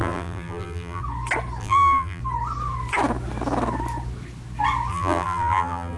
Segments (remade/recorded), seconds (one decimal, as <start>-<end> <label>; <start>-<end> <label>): 0.0-1.0 remade; 1.0-1.6 recorded; 1.6-2.2 remade; 2.2-4.9 recorded; 4.9-6.0 remade